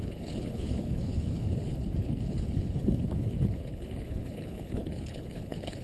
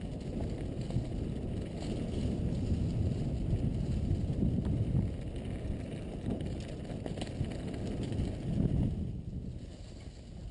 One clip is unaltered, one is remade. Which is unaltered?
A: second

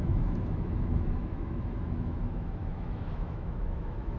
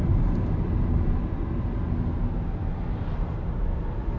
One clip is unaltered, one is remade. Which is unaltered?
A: second